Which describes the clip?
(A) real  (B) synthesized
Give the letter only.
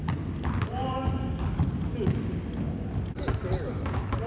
A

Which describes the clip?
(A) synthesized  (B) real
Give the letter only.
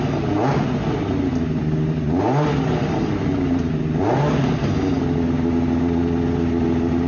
B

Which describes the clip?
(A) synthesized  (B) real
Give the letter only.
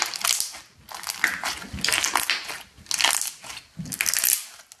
B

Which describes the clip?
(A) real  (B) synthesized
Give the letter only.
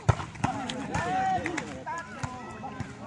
A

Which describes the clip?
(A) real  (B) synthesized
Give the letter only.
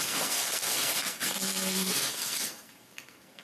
B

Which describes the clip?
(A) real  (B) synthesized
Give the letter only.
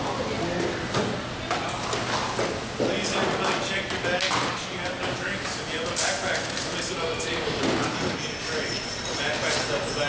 A